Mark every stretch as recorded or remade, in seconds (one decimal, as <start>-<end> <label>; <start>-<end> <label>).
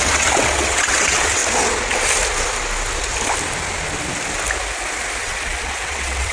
0.0-1.4 remade; 1.4-5.2 recorded; 5.2-6.3 remade